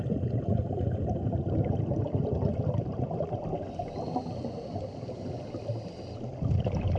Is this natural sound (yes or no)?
yes